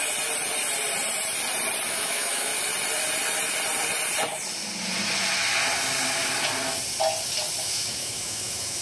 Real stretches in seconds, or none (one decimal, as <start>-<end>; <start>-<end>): 0.0-1.9; 2.5-7.6